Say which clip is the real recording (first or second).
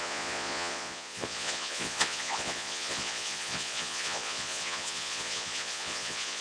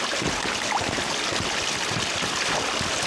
second